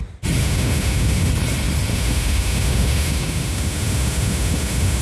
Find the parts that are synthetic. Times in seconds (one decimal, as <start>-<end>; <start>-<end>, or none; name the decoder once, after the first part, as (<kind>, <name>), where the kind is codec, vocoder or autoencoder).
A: 0.4-1.3 (autoencoder, DAC-VAE); 1.9-5.0